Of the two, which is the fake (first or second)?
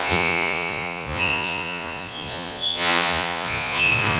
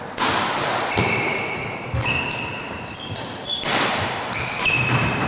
first